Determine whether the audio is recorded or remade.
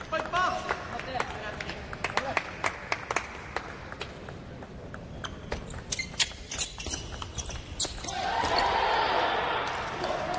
recorded